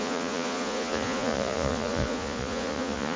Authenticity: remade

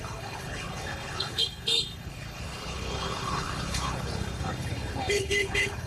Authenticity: remade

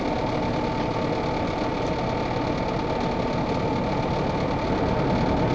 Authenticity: recorded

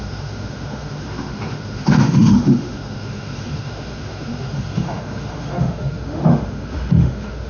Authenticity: remade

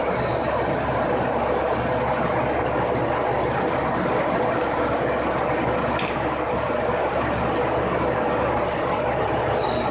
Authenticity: recorded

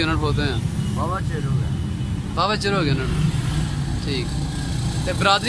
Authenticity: recorded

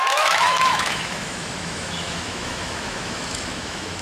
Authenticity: remade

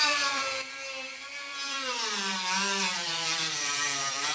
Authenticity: remade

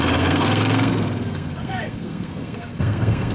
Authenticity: remade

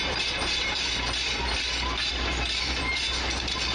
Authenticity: remade